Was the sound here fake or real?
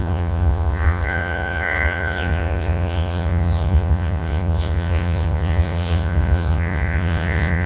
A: fake